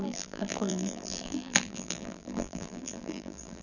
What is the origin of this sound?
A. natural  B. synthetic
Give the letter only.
B